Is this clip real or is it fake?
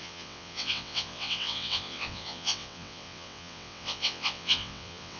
fake